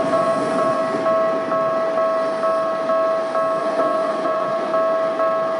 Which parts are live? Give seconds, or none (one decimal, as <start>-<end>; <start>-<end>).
0.8-3.6; 4.7-5.6

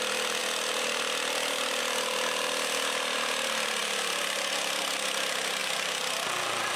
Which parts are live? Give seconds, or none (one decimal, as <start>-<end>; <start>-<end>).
0.0-0.4; 1.8-3.8; 4.5-5.6